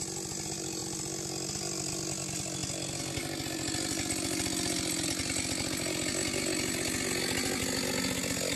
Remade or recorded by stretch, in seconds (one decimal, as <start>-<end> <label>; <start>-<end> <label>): 0.0-8.6 recorded